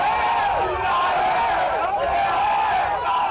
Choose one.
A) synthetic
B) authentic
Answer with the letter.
B